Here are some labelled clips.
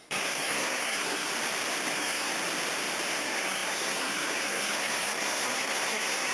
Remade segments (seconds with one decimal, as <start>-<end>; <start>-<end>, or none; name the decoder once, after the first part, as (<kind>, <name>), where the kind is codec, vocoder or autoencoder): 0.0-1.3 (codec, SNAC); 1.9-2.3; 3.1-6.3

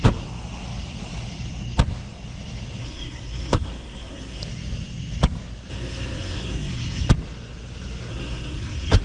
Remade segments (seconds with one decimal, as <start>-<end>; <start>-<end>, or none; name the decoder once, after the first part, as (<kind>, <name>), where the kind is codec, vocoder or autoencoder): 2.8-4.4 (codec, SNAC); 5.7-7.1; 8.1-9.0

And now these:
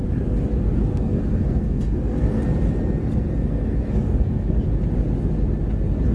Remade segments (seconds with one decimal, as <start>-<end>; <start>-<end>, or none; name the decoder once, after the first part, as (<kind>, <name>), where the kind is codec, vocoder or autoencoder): 0.9-2.4 (codec, SNAC); 3.0-4.6

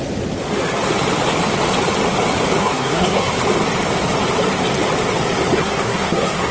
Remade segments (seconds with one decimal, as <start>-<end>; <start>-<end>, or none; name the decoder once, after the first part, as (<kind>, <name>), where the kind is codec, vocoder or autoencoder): 2.6-3.3 (codec, SNAC); 5.6-6.5

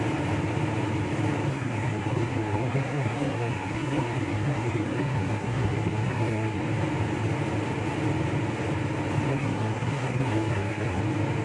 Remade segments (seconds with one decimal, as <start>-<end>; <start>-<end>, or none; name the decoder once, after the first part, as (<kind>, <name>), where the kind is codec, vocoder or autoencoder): 1.5-6.6 (codec, SNAC); 9.3-11.0

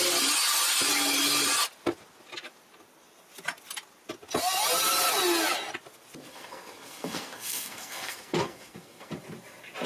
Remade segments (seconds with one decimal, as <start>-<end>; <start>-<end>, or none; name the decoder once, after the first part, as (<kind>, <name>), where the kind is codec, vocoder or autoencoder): 6.3-9.1 (codec, SNAC)

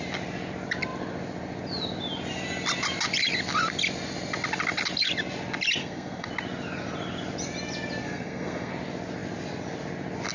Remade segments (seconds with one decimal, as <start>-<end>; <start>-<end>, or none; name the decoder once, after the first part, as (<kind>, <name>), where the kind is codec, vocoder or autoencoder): 5.8-6.3 (codec, SNAC); 8.0-8.7

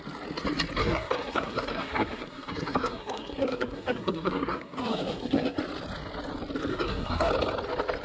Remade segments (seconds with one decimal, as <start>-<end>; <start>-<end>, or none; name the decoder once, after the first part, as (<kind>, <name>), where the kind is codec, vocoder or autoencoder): 0.8-5.6 (codec, SNAC); 6.7-7.3